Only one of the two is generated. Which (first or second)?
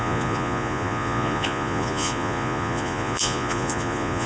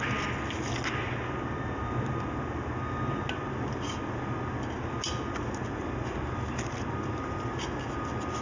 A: first